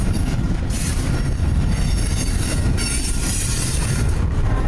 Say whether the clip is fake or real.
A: fake